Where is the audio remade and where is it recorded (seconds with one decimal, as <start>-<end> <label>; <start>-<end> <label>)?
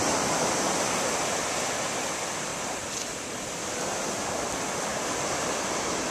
0.0-2.5 remade; 2.5-3.3 recorded; 3.3-6.1 remade